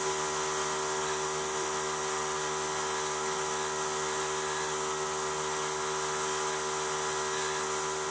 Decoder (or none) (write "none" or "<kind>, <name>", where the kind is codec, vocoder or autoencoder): none